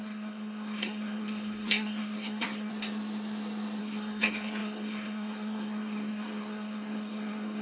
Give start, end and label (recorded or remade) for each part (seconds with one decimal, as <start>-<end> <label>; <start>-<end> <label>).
0.0-2.7 remade; 2.7-3.8 recorded; 3.8-7.6 remade